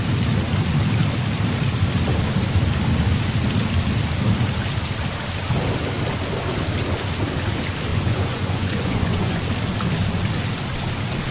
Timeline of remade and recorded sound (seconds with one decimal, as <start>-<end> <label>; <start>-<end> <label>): 0.0-7.9 recorded; 7.9-9.4 remade; 9.4-11.3 recorded